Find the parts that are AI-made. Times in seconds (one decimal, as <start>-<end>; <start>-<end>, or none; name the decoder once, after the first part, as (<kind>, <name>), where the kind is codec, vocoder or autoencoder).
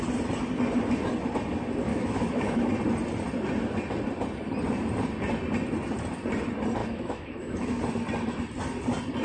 1.9-2.7 (autoencoder, DAC-VAE); 6.8-7.8